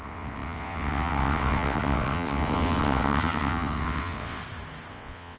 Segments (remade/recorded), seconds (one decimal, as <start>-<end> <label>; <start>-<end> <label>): 0.0-4.4 remade; 4.4-4.9 recorded; 4.9-5.4 remade